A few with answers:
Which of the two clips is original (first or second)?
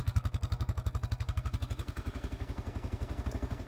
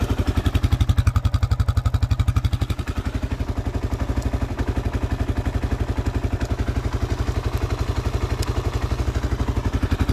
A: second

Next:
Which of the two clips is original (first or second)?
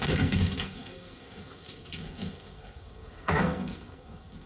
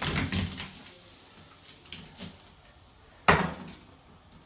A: second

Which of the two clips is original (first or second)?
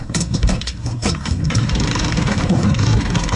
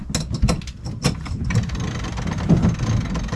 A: second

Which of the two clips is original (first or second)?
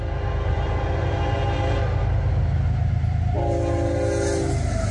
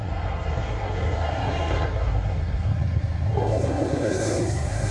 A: first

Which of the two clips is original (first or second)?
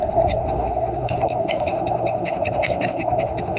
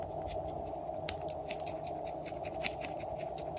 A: second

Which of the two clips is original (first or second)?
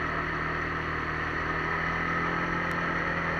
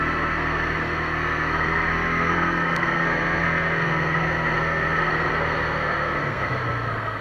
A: first